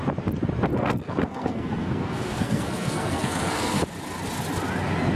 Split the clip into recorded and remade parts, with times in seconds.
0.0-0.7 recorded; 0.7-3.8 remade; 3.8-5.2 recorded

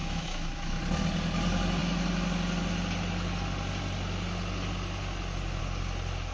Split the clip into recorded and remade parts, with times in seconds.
0.0-0.8 remade; 0.8-6.3 recorded